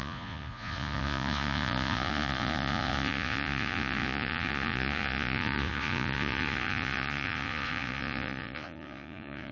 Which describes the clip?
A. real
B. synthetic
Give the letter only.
B